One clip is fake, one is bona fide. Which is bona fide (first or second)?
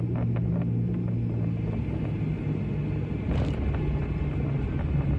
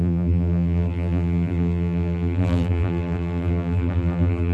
first